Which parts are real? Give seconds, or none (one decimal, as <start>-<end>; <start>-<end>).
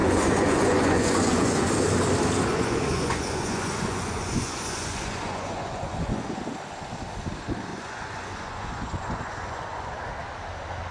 1.7-2.5; 6.4-7.7; 9.9-10.9